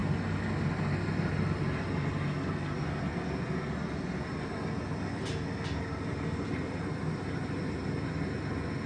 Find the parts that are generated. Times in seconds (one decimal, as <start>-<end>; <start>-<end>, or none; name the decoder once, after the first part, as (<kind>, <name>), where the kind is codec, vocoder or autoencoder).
none